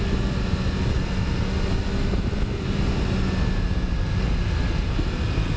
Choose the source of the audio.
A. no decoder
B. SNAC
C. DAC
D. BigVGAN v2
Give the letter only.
A